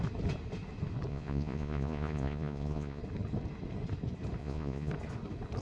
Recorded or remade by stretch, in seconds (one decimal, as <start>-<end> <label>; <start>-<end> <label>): 0.0-1.1 recorded; 1.1-3.0 remade; 3.0-4.4 recorded; 4.4-4.9 remade; 4.9-5.6 recorded